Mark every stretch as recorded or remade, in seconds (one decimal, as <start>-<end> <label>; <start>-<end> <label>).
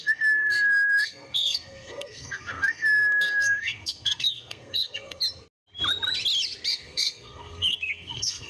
0.0-5.2 remade; 5.2-6.7 recorded; 6.7-8.5 remade